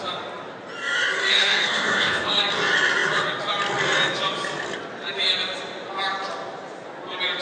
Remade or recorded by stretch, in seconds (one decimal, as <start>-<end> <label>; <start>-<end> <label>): 0.0-1.2 recorded; 1.2-2.4 remade; 2.4-7.4 recorded